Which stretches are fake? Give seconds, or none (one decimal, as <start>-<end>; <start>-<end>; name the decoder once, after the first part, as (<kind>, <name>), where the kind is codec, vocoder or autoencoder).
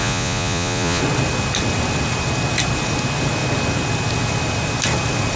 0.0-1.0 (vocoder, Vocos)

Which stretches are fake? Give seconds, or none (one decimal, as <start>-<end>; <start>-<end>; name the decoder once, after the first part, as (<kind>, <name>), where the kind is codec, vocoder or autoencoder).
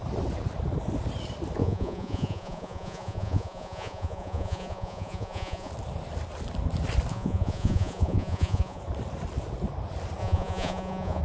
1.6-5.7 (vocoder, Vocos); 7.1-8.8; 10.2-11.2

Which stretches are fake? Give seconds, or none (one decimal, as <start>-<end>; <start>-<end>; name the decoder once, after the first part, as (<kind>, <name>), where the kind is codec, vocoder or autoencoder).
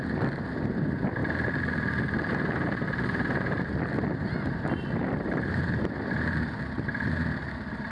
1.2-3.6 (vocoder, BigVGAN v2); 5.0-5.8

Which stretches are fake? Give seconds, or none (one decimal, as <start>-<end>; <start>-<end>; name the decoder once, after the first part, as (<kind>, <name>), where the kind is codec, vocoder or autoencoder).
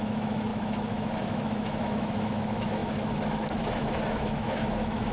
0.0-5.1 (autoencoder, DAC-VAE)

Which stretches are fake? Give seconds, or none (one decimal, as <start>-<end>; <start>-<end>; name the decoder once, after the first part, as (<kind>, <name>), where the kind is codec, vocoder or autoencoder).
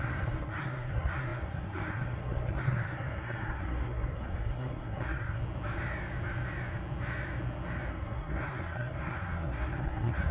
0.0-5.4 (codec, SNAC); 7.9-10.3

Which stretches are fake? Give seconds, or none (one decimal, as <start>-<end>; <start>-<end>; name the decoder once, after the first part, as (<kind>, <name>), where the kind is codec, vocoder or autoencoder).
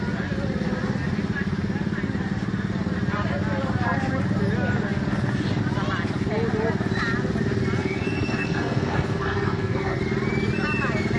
7.8-10.0 (codec, SNAC)